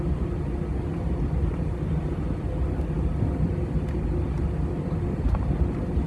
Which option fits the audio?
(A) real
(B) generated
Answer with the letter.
A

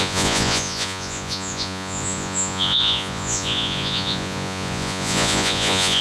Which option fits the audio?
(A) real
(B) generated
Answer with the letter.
B